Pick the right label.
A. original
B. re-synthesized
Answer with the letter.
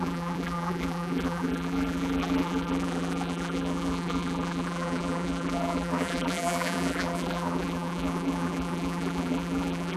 B